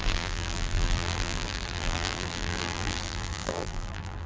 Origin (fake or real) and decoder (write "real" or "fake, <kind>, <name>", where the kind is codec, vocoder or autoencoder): fake, vocoder, BigVGAN v2